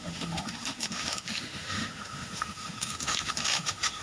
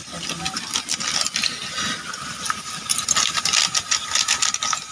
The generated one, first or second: first